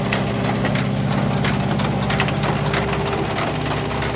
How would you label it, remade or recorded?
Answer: recorded